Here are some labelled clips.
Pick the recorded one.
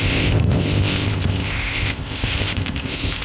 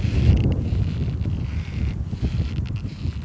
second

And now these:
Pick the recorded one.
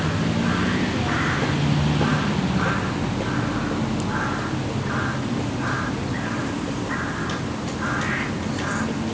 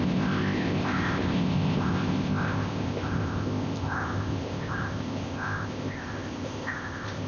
first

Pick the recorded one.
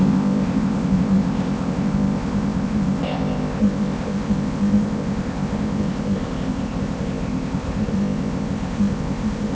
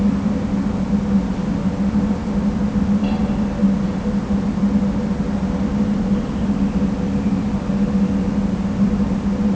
second